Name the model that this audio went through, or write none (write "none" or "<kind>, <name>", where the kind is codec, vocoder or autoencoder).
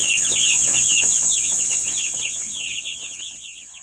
vocoder, WaveNeXt